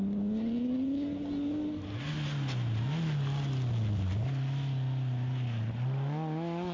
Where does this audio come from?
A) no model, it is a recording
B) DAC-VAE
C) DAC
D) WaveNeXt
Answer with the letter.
A